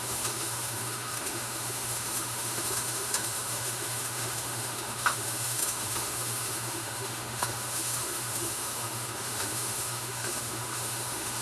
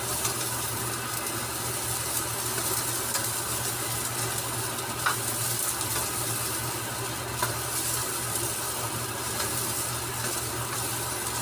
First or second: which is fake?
first